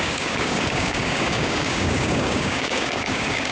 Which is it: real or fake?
fake